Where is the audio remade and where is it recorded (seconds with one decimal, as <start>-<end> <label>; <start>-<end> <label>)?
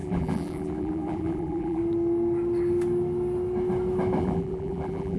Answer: 0.0-1.8 remade; 1.8-4.2 recorded; 4.2-5.2 remade